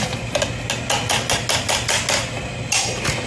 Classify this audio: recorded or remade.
recorded